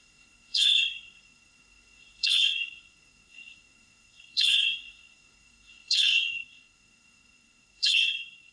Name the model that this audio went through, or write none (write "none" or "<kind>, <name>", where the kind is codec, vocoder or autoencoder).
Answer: codec, SNAC